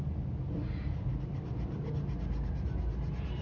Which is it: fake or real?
real